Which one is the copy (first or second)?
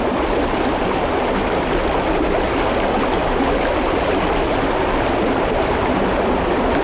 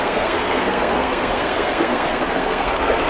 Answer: second